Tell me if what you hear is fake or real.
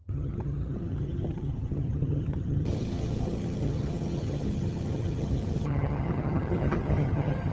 fake